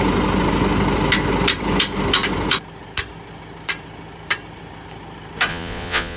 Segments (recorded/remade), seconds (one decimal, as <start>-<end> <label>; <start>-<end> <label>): 0.0-5.5 recorded; 5.5-6.2 remade